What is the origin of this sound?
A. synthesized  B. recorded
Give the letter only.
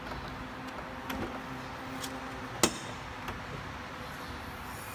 B